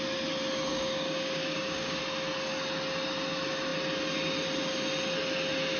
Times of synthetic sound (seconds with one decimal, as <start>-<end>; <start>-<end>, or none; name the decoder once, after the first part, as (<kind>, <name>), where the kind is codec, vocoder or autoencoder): 0.7-2.0 (codec, DAC)